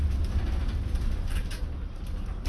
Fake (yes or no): no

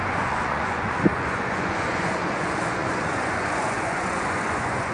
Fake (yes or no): yes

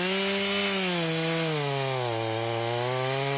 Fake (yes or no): no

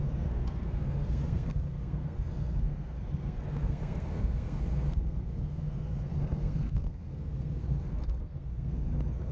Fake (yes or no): yes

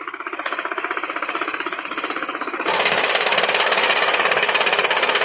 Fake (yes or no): yes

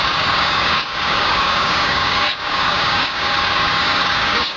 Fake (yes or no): yes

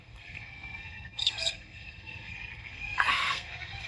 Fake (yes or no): yes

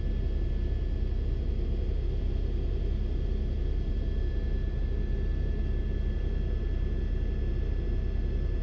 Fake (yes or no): no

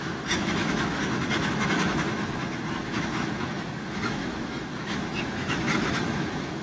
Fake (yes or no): yes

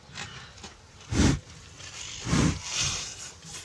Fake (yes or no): no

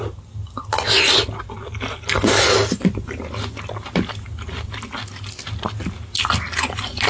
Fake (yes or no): no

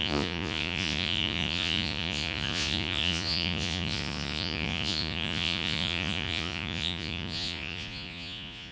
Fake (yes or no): yes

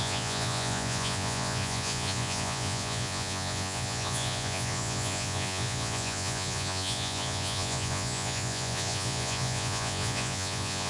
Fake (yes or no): yes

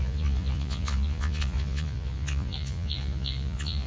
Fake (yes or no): yes